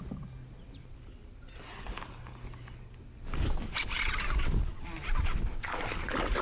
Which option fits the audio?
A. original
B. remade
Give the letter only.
A